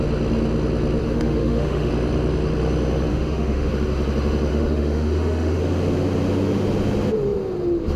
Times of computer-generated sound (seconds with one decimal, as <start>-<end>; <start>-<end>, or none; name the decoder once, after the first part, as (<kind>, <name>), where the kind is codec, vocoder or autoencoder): 1.0-1.9 (autoencoder, DAC-VAE); 3.1-3.7; 4.5-5.6